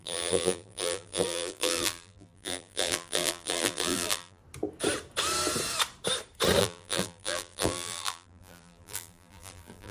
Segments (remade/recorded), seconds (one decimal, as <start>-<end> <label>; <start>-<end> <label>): 0.0-4.4 remade; 4.4-6.6 recorded; 6.6-9.9 remade